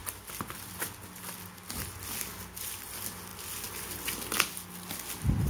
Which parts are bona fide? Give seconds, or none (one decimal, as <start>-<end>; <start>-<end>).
0.0-5.5